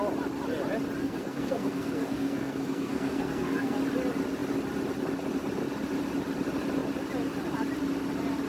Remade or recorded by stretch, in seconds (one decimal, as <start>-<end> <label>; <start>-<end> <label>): 0.0-1.0 recorded; 1.0-3.8 remade; 3.8-8.5 recorded